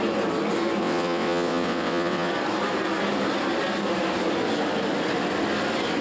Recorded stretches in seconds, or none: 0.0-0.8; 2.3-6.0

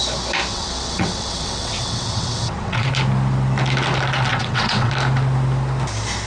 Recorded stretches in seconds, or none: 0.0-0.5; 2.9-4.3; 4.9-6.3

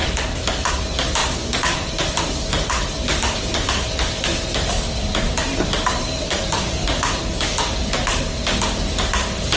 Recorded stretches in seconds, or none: 0.0-9.6

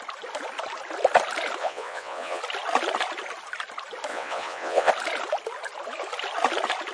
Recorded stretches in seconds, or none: 0.0-1.6; 2.4-4.1; 4.9-6.9

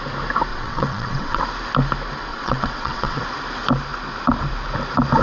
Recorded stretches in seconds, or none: 0.0-0.5; 1.4-2.3; 3.2-5.2